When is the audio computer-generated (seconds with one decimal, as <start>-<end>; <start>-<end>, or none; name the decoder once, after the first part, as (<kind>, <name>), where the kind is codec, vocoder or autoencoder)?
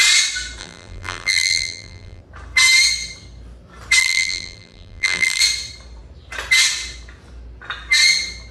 0.6-2.2 (vocoder, BigVGAN v2); 4.0-5.4